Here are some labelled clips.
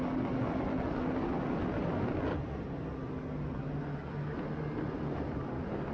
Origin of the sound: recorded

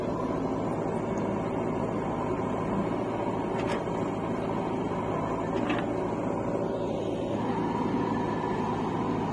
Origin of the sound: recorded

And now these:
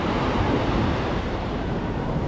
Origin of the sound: remade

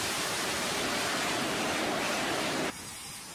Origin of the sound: remade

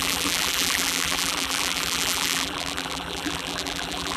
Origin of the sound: remade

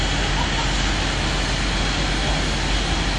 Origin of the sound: recorded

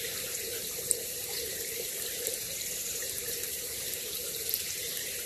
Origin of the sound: remade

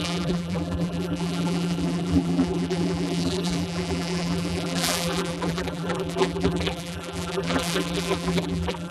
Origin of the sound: remade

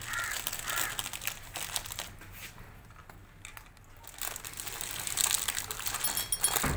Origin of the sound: recorded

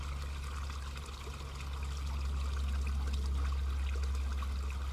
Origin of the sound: recorded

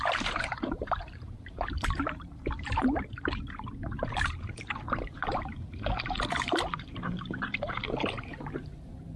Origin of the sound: remade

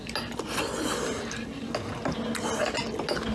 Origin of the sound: recorded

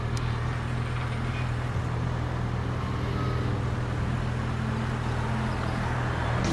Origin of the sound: recorded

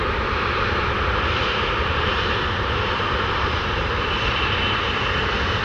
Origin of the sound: remade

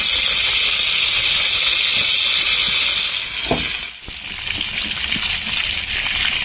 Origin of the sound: recorded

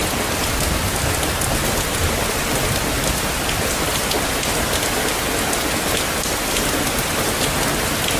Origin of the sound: recorded